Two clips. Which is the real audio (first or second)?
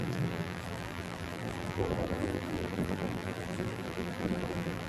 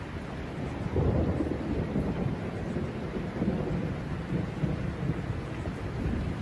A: second